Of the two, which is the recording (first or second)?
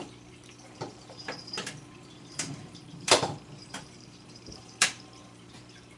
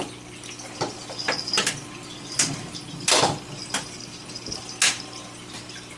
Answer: second